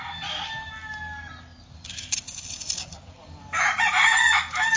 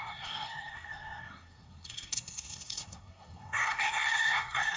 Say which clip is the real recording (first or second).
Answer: first